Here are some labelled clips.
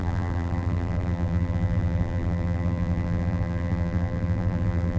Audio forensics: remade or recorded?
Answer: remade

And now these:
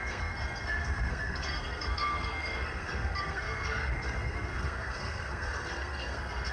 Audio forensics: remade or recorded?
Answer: remade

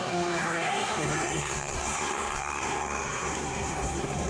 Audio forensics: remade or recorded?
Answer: remade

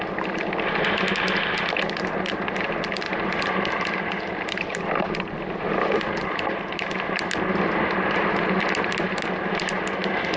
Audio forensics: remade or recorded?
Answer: recorded